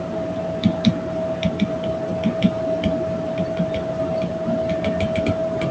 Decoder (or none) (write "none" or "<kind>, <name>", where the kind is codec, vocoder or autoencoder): vocoder, BigVGAN v2